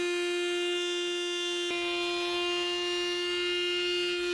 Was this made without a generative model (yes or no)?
yes